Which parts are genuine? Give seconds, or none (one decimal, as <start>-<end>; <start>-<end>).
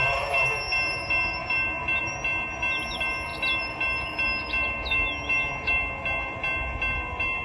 0.0-7.4